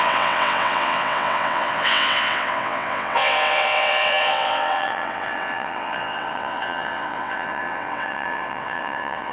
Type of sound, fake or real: fake